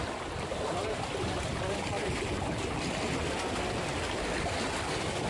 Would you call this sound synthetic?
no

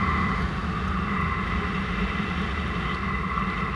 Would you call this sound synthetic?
no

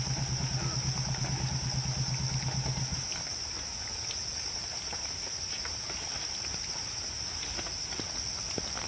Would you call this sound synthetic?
no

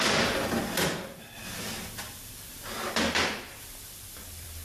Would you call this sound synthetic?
yes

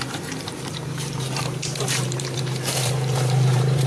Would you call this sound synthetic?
yes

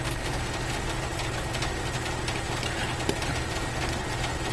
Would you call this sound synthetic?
no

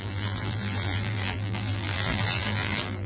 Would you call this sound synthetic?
yes